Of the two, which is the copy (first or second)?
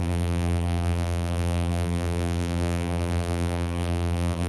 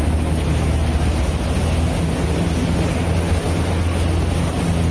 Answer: first